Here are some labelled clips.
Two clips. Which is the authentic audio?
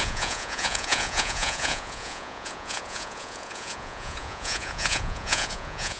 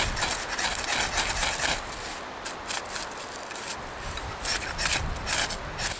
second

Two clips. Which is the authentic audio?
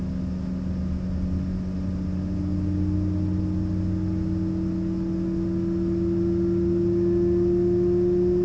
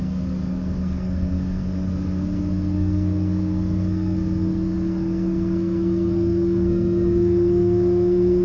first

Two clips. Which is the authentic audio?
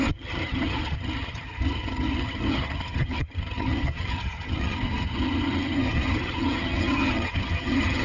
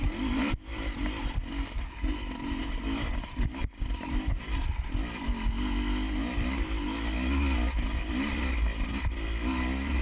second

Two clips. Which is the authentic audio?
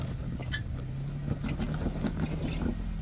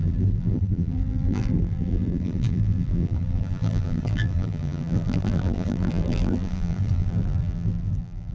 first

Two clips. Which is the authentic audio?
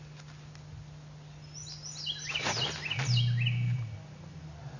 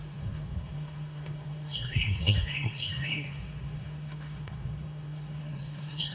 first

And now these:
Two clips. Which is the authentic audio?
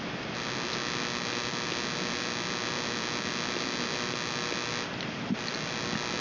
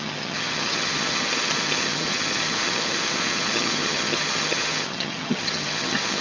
first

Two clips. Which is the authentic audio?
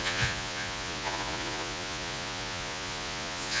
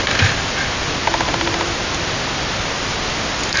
second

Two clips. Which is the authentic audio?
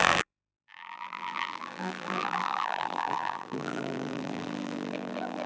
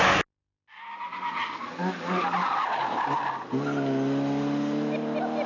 second